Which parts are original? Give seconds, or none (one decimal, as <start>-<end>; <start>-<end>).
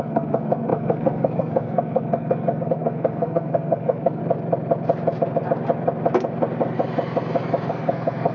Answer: 4.2-7.7